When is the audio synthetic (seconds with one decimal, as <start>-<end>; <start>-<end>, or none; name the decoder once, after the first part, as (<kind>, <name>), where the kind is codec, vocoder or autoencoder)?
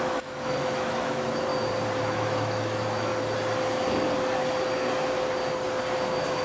0.0-1.5 (autoencoder, DAC-VAE); 2.0-3.1